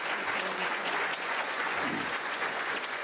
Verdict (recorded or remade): remade